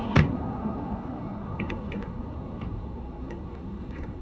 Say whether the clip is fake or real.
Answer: fake